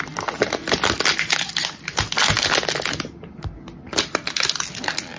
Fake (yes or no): no